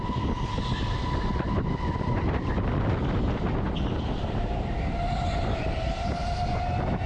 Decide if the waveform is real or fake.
real